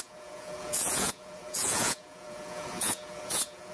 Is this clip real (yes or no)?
no